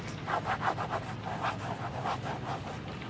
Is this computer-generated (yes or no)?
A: no